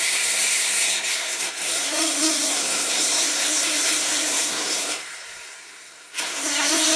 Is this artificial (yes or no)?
yes